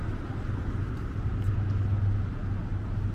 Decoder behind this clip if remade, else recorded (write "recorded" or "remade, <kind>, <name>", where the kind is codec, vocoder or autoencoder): recorded